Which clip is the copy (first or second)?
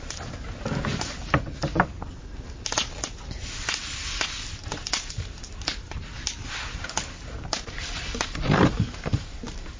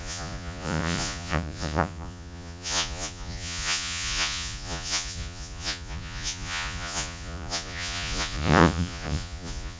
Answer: second